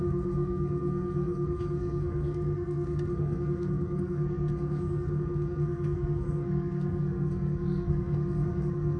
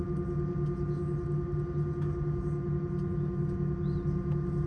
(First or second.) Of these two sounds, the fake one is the first